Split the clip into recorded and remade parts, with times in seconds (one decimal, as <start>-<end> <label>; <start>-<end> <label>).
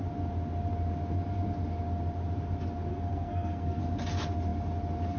0.0-2.9 recorded; 2.9-3.8 remade; 3.8-5.2 recorded